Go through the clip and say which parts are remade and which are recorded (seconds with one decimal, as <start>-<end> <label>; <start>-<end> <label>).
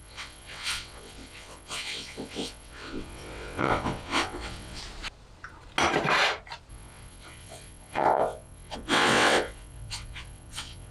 0.0-4.8 remade; 4.8-6.7 recorded; 6.7-10.9 remade